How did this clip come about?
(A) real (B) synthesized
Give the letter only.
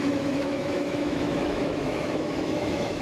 B